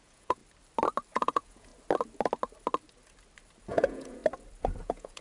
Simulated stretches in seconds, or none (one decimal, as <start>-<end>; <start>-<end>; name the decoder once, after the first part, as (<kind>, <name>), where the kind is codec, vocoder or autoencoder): 0.0-0.4 (vocoder, Vocos); 1.1-1.7; 3.7-4.2; 4.8-5.2